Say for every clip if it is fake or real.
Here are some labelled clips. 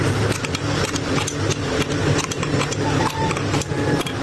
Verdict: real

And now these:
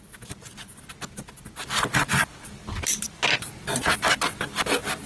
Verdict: real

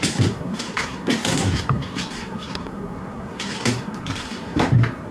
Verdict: fake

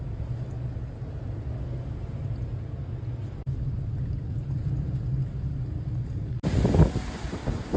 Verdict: real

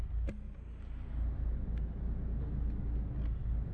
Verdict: real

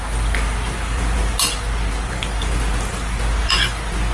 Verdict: real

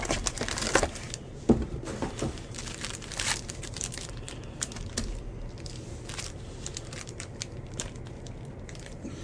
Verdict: real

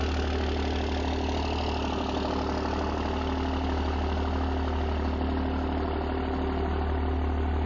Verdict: real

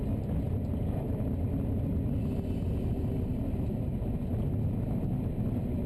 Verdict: real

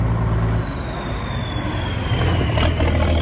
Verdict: real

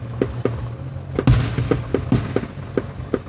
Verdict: real